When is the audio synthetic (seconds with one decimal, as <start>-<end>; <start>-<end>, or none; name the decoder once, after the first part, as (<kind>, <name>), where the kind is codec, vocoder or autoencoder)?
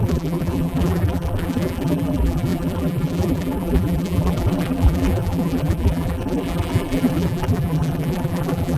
0.0-8.8 (vocoder, BigVGAN v2)